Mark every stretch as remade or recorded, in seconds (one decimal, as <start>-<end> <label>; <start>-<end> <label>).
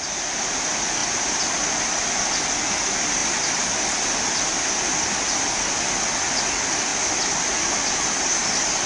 0.0-6.9 recorded; 6.9-8.3 remade; 8.3-8.9 recorded